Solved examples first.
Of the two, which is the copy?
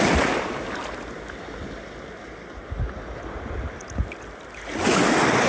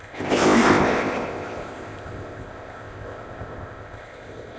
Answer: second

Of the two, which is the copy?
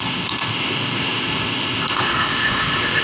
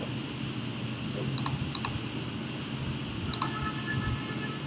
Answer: first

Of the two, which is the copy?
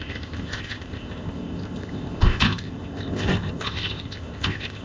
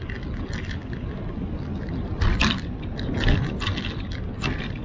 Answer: first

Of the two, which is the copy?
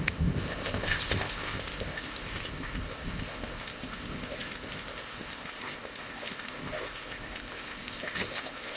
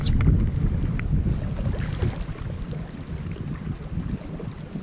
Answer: first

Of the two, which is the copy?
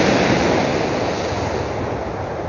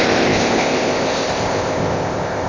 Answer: second